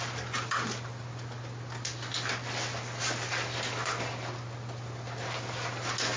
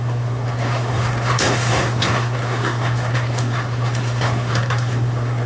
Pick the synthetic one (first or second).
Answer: second